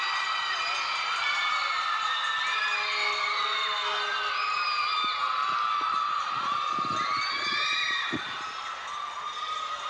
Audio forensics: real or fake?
real